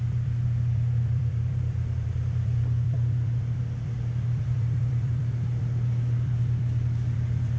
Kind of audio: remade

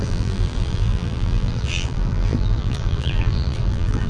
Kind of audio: remade